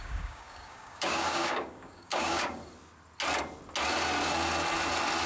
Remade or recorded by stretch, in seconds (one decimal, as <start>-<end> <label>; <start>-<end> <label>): 0.0-2.6 remade; 2.6-5.3 recorded